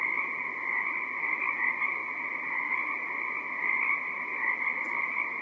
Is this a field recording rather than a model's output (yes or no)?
yes